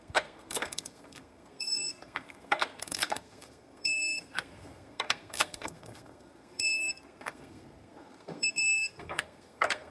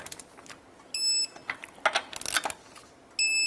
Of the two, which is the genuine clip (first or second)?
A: second